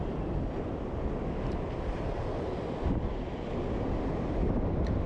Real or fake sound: real